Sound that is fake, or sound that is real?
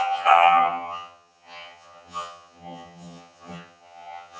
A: fake